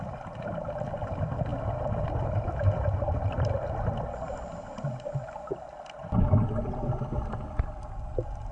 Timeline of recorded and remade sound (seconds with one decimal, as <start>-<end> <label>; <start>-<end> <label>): 0.0-8.5 recorded